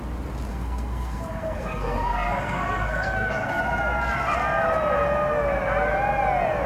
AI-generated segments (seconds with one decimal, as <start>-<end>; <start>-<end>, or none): 0.5-3.6